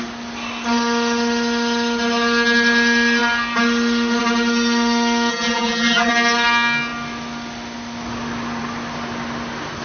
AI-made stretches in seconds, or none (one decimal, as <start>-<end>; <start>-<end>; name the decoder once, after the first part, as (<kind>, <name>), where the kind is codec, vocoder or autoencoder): 5.3-6.1 (vocoder, BigVGAN v2)